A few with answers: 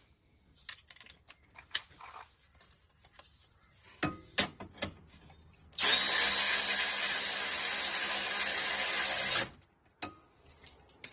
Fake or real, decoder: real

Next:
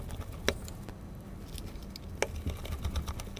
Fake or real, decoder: real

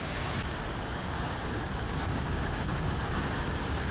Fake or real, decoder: fake, codec, DAC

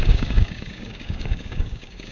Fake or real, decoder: fake, codec, DAC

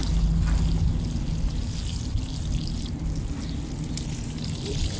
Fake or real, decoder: real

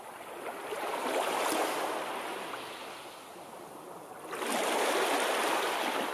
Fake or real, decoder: real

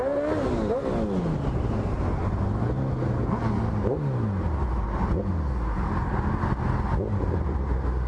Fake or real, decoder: real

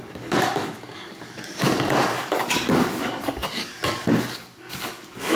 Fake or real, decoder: fake, codec, DAC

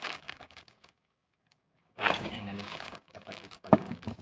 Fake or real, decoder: fake, codec, DAC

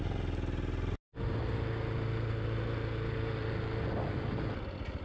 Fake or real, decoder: real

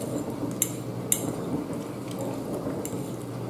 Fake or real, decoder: real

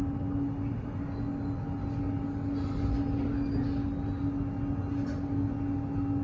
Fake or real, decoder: real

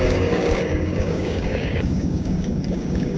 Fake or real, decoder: fake, codec, DAC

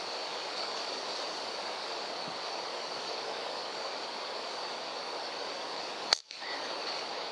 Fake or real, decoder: fake, codec, DAC